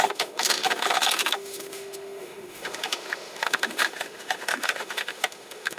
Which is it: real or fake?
fake